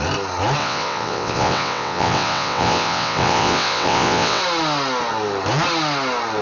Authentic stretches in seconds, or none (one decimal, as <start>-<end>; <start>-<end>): 0.0-0.6; 4.4-6.4